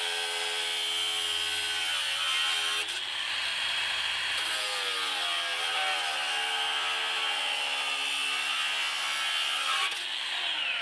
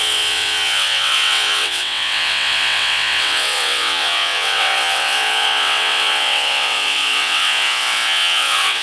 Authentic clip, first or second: first